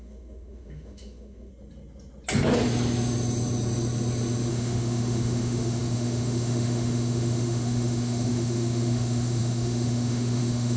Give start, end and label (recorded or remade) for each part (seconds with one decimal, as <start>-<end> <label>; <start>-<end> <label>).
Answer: 0.0-1.5 remade; 1.5-4.5 recorded; 4.5-10.8 remade